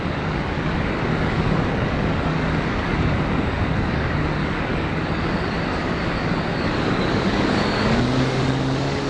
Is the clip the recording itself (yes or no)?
no